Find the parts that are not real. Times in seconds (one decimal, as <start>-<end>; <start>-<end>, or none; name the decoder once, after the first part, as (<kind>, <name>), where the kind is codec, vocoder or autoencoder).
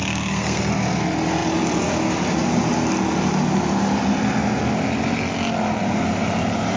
0.0-0.7 (codec, SNAC)